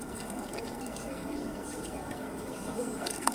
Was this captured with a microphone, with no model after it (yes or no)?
no